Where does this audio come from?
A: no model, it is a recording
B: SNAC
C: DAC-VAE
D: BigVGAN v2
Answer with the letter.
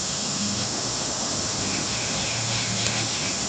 C